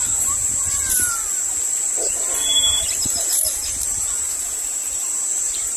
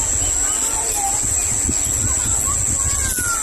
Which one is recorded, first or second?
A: second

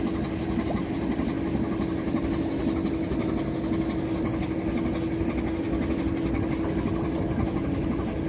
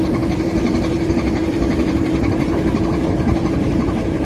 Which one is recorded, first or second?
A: first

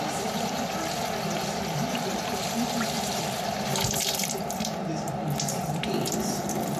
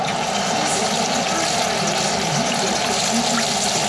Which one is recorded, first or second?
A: second